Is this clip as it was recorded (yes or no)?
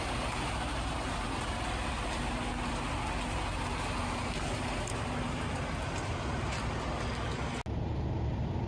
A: yes